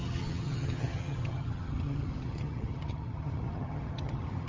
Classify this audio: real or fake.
fake